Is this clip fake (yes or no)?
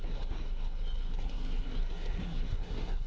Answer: yes